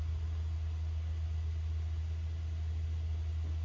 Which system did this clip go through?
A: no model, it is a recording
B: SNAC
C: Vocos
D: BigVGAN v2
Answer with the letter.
A